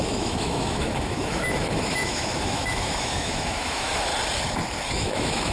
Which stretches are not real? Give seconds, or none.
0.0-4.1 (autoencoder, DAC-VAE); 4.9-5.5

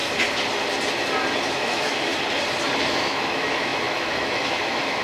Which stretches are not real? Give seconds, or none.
1.5-2.1 (autoencoder, DAC-VAE); 2.9-5.0

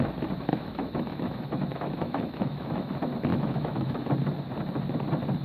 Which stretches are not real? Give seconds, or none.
0.5-2.9 (autoencoder, DAC-VAE); 3.3-4.1

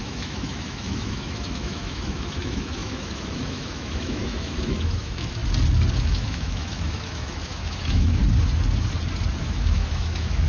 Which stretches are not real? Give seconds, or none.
0.0-5.4 (autoencoder, DAC-VAE); 6.0-8.2; 9.4-10.5

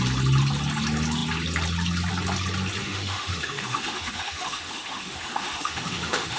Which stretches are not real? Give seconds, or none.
2.8-6.4 (autoencoder, DAC-VAE)

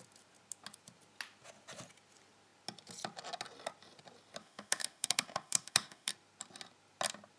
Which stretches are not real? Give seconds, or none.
4.4-6.1 (autoencoder, DAC-VAE)

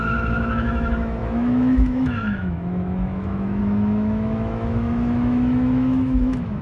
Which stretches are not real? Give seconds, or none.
0.0-6.6 (autoencoder, DAC-VAE)

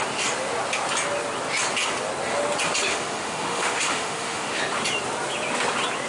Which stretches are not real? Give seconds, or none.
2.9-4.6 (autoencoder, DAC-VAE)